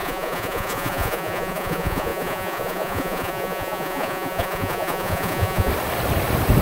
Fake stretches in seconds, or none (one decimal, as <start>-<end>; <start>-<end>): 0.0-5.7